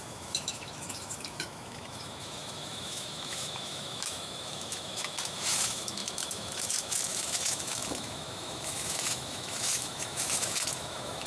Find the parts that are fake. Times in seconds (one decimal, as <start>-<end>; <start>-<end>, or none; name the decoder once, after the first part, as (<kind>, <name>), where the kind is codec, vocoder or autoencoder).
0.0-11.3 (autoencoder, DAC-VAE)